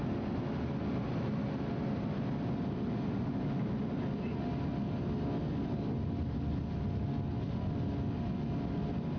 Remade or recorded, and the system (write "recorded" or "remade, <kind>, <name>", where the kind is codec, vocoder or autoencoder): recorded